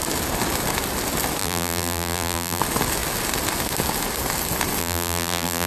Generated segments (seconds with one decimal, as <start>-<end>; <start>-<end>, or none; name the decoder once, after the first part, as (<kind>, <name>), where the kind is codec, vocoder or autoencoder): 1.4-2.6 (vocoder, BigVGAN v2); 4.8-5.7